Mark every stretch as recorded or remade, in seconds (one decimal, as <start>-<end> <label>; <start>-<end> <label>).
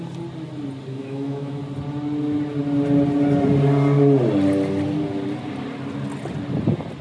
0.0-0.9 recorded; 0.9-1.6 remade; 1.6-7.0 recorded